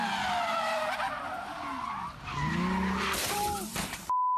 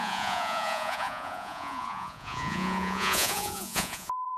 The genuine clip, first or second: first